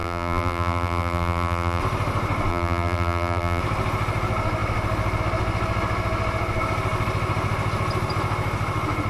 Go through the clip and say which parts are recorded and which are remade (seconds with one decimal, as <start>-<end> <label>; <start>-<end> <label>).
0.0-1.8 remade; 1.8-2.5 recorded; 2.5-3.6 remade; 3.6-9.1 recorded